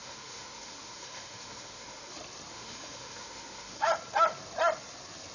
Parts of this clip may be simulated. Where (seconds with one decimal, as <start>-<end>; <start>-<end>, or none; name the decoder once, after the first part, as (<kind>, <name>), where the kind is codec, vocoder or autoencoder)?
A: 0.0-2.1 (autoencoder, DAC-VAE); 2.5-3.9